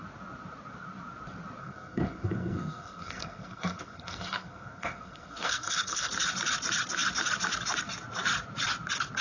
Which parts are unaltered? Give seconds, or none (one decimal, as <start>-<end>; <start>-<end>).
0.0-1.6; 6.1-9.2

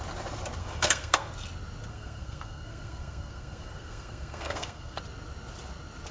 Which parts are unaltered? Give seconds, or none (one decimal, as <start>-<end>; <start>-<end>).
0.0-0.6; 1.3-1.9; 5.0-6.1

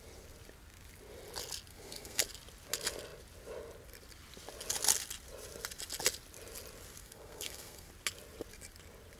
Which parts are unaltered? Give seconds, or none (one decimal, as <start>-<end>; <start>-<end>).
0.0-1.7; 2.2-7.0; 7.9-9.2

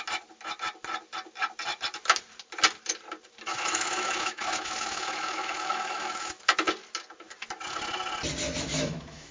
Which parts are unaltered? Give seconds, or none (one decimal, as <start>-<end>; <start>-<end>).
0.0-3.5; 6.4-8.7